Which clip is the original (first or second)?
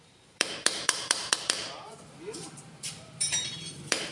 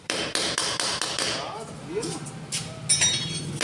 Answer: second